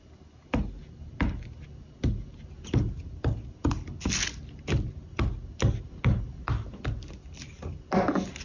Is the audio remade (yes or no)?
no